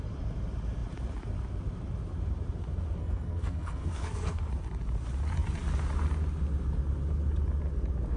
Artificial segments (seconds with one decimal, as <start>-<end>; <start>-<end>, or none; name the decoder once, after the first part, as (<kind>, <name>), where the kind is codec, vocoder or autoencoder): 3.0-4.5 (codec, SNAC)